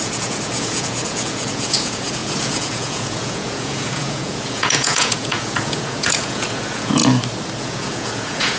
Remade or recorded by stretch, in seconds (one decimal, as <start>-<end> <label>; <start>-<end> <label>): 0.0-7.0 remade; 7.0-7.6 recorded; 7.6-8.6 remade